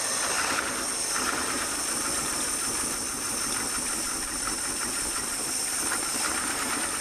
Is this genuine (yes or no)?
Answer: yes